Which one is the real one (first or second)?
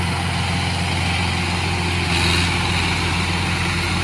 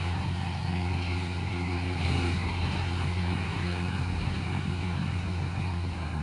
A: first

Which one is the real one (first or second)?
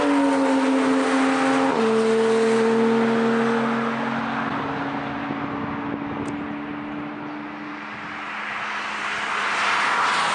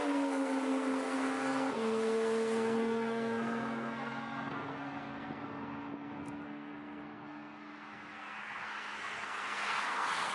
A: first